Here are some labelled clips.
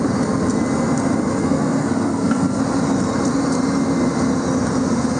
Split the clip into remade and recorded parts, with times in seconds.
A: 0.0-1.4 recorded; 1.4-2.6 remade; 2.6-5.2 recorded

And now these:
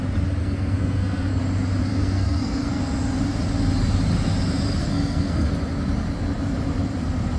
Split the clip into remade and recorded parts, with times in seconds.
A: 0.0-0.4 recorded; 0.4-1.4 remade; 1.4-1.9 recorded; 1.9-2.8 remade; 2.8-4.8 recorded; 4.8-5.5 remade; 5.5-7.4 recorded

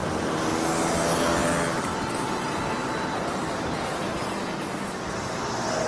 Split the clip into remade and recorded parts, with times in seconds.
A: 0.0-5.9 recorded

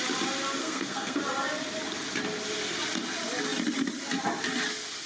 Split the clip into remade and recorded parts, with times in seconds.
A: 0.0-0.6 recorded; 0.6-1.2 remade; 1.2-5.1 recorded

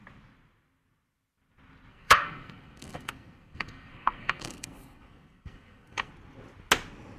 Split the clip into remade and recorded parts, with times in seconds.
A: 0.0-1.9 recorded; 1.9-6.1 remade; 6.1-7.2 recorded